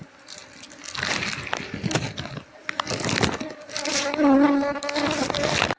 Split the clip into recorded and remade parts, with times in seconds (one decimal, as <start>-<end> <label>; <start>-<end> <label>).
0.0-5.8 recorded

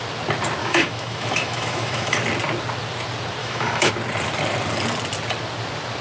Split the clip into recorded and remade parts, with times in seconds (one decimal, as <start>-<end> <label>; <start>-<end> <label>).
0.0-0.6 recorded; 0.6-2.1 remade; 2.1-3.4 recorded; 3.4-3.9 remade; 3.9-6.0 recorded